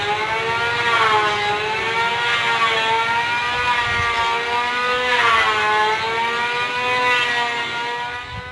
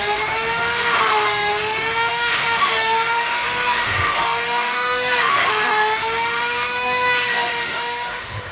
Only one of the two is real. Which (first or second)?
first